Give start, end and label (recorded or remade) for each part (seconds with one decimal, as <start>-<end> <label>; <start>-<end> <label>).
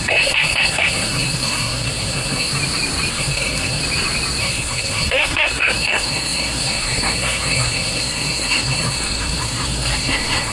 0.0-2.5 remade; 2.5-3.1 recorded; 3.1-3.8 remade; 3.8-4.4 recorded; 4.4-10.5 remade